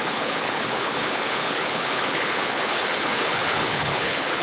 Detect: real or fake fake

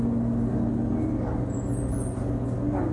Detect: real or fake real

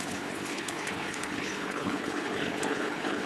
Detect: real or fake fake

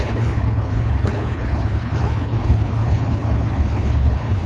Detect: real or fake fake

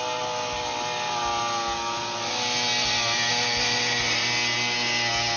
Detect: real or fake real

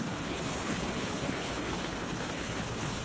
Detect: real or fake fake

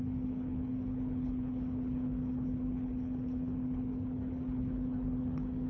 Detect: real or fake fake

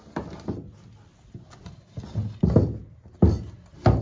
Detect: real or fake real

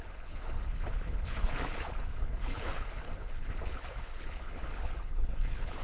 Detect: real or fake fake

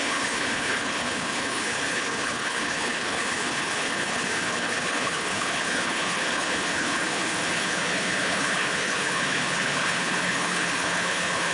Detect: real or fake fake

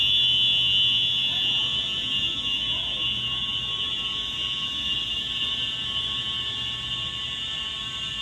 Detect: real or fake real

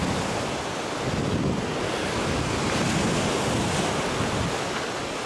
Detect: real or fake real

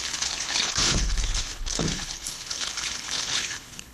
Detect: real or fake fake